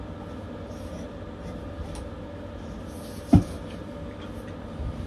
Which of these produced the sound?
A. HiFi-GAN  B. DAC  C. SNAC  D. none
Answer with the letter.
D